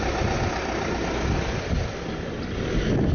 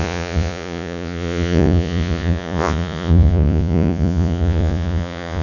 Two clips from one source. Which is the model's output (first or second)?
second